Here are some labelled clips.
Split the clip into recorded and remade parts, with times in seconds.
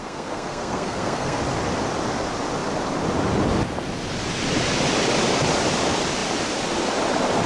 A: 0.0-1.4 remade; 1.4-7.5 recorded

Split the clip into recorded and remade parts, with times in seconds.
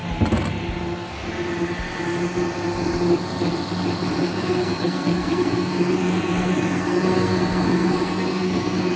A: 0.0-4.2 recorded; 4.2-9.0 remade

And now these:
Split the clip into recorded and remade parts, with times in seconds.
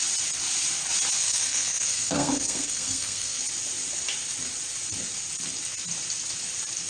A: 0.0-1.2 recorded; 1.2-3.4 remade; 3.4-6.9 recorded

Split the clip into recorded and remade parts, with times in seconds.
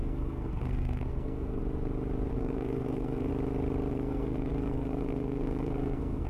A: 0.0-1.6 remade; 1.6-2.3 recorded; 2.3-3.3 remade; 3.3-3.9 recorded; 3.9-6.3 remade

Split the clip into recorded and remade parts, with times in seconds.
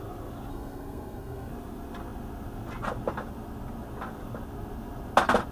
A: 0.0-0.5 recorded; 0.5-1.5 remade; 1.5-5.5 recorded